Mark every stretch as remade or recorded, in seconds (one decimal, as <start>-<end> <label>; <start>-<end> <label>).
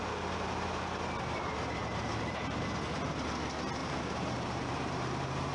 0.0-1.8 recorded; 1.8-2.6 remade; 2.6-3.8 recorded; 3.8-5.5 remade